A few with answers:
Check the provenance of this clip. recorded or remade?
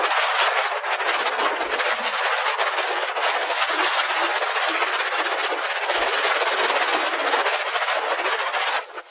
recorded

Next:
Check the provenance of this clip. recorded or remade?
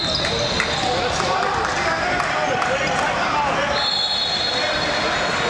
recorded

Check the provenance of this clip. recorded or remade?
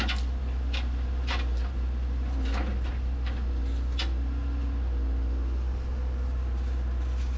recorded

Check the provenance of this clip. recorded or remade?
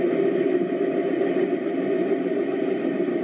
recorded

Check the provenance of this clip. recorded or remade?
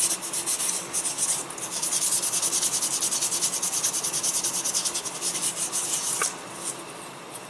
recorded